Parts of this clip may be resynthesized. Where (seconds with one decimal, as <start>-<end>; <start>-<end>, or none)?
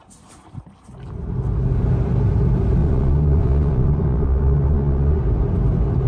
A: 2.8-5.2